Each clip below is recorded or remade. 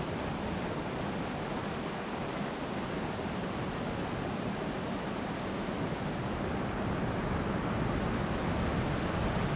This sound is recorded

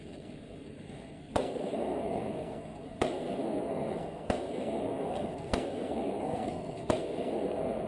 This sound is remade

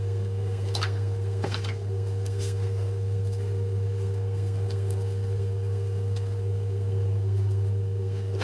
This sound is remade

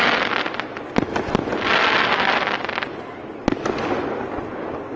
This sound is recorded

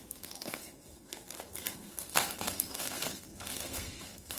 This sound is remade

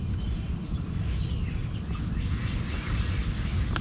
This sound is recorded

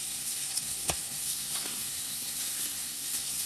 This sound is remade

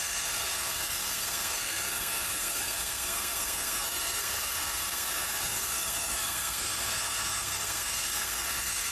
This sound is remade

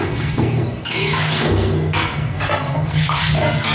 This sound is remade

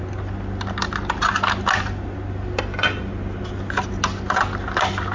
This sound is recorded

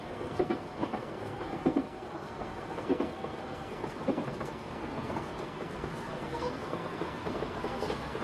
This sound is remade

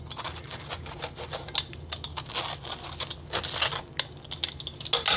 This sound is recorded